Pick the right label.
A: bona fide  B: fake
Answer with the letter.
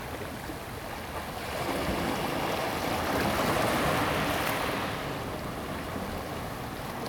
A